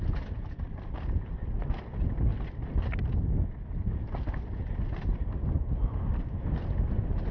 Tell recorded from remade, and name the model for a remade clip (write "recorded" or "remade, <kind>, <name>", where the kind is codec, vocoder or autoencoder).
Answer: recorded